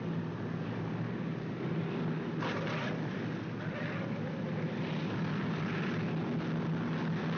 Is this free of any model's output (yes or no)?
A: yes